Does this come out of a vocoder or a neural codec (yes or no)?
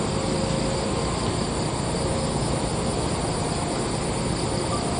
no